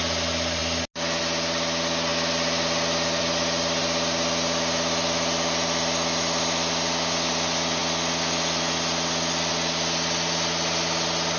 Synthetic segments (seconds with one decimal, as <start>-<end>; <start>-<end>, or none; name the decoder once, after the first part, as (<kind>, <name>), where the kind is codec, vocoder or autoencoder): none

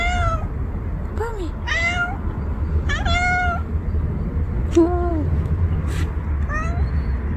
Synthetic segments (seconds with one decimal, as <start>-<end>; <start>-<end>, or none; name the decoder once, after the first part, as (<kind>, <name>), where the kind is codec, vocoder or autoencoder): none

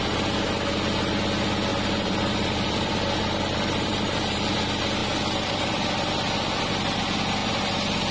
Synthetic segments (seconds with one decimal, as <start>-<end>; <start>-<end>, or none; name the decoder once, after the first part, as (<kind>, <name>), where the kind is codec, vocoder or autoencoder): 1.7-4.5 (vocoder, BigVGAN v2); 5.0-6.6; 7.4-8.1